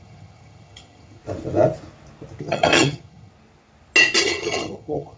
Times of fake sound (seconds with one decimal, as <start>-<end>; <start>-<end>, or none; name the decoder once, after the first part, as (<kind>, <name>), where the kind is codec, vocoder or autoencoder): 0.0-1.2 (vocoder, HiFi-GAN); 2.4-3.3; 4.2-5.2